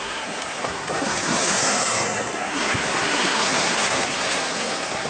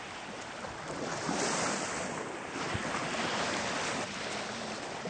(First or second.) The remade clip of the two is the first